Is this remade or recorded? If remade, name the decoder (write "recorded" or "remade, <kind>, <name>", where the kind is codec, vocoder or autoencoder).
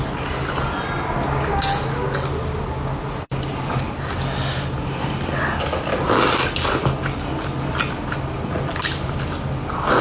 recorded